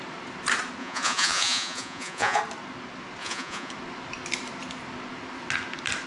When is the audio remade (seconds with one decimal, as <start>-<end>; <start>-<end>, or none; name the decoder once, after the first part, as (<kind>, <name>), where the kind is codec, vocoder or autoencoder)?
0.8-2.4 (vocoder, Vocos); 3.2-3.7